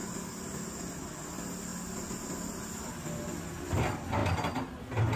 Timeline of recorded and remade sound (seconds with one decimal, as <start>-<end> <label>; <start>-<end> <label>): 0.0-5.2 recorded